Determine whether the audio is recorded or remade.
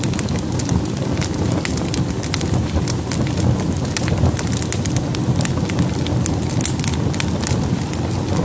recorded